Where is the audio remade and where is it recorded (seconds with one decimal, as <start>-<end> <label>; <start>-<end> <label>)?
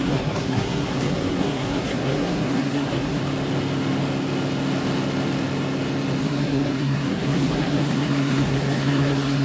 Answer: 0.0-3.2 remade; 3.2-6.2 recorded; 6.2-9.4 remade